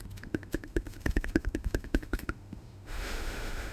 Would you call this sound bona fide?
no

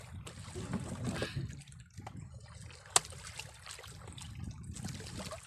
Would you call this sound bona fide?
yes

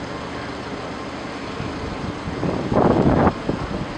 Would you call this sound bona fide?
yes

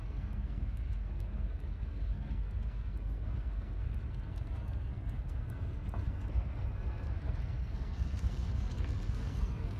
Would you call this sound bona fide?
no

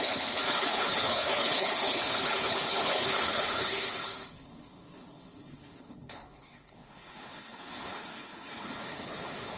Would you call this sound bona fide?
no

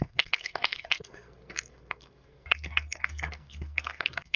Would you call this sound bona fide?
no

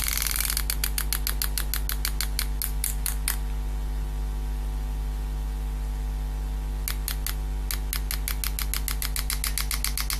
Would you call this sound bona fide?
yes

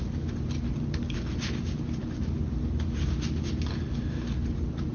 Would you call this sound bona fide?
yes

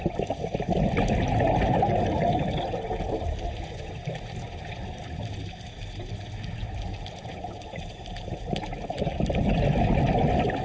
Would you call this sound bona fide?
yes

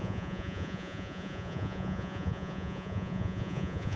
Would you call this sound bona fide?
no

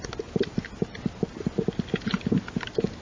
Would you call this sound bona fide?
yes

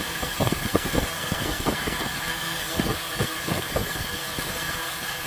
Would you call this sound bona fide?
no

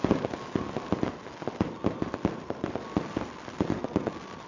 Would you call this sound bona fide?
no